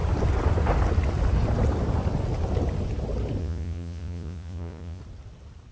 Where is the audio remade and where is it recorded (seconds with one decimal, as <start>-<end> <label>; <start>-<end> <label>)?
0.0-3.4 recorded; 3.4-5.0 remade; 5.0-5.7 recorded